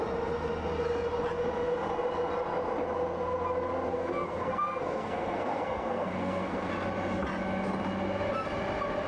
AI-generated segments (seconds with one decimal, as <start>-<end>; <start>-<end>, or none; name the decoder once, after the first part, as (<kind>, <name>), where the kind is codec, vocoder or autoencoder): 3.9-6.7 (codec, SNAC)